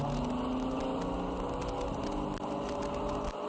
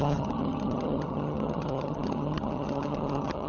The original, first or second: first